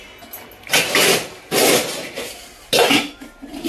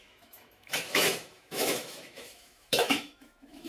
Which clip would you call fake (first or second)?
second